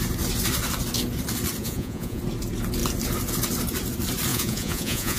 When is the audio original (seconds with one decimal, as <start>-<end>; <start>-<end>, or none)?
0.0-1.6; 2.2-4.3